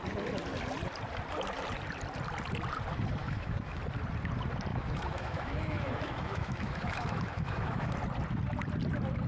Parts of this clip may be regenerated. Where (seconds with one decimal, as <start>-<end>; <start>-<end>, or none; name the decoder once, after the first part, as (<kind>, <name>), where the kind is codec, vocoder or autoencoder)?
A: 3.2-3.8 (autoencoder, DAC-VAE); 4.7-7.9